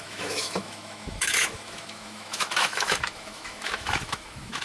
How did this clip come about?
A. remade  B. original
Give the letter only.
A